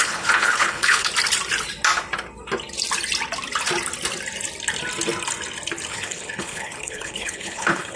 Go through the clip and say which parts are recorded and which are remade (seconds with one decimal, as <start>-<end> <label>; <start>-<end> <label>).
0.0-1.1 remade; 1.1-5.9 recorded; 5.9-8.0 remade